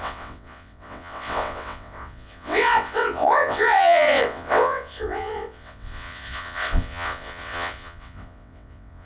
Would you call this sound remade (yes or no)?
yes